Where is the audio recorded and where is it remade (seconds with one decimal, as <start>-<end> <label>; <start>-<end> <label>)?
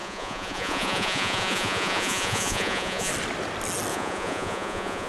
0.0-3.1 remade; 3.1-3.9 recorded; 3.9-5.1 remade